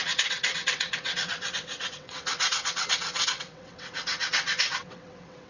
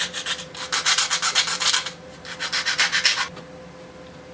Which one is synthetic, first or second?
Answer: first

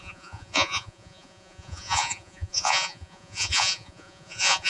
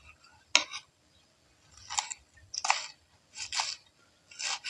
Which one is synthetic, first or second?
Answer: first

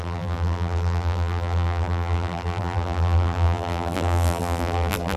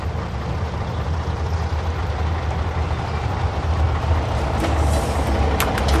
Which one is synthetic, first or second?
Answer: first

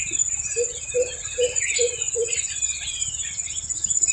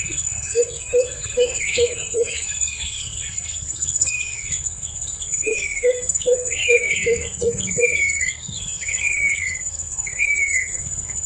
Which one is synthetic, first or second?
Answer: second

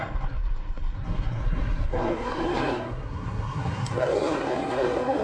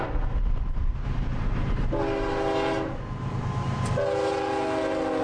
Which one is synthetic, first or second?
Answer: first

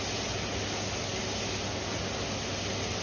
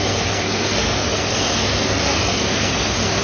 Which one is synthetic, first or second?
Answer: second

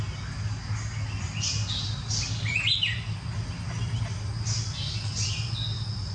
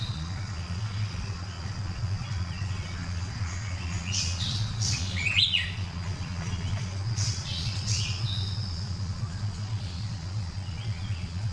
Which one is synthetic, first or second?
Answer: second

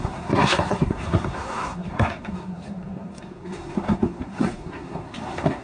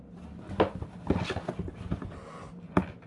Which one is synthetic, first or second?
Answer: first